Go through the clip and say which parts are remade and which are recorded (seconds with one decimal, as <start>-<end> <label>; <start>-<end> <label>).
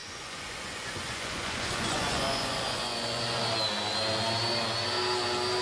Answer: 0.0-3.4 remade; 3.4-5.6 recorded